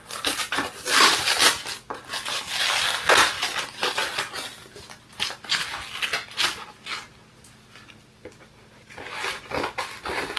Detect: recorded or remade recorded